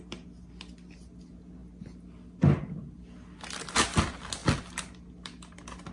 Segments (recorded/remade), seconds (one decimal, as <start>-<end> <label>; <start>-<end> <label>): 0.0-5.9 recorded